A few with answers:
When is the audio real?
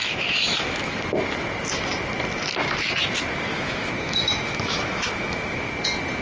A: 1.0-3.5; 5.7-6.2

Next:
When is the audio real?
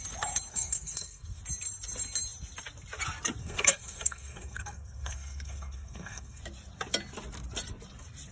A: 0.0-0.5; 1.4-3.4; 6.4-8.3